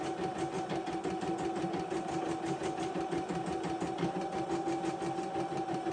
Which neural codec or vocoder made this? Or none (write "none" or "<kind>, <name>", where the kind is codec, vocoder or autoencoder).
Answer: none